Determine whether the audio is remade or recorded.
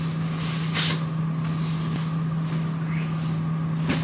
recorded